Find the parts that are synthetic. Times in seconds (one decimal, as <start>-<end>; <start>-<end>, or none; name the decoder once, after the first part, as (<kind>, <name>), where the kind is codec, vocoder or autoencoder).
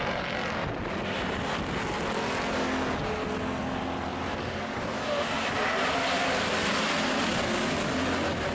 4.1-4.6 (vocoder, BigVGAN v2)